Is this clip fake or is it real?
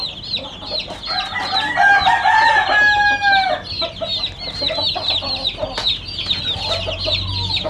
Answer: real